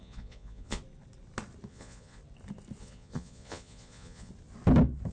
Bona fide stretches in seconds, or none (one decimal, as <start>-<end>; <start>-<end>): 0.8-1.7; 2.2-2.8; 4.3-5.1